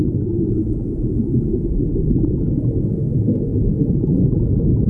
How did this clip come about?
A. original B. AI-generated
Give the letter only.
A